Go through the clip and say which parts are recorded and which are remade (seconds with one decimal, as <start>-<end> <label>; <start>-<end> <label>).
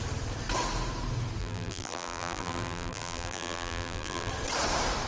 0.0-1.4 recorded; 1.4-4.3 remade; 4.3-5.1 recorded